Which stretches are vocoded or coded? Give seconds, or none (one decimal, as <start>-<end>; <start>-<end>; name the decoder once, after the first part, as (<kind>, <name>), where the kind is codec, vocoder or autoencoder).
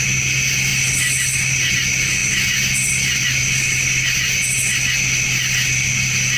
0.7-1.7 (vocoder, BigVGAN v2)